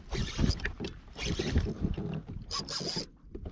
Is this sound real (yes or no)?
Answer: yes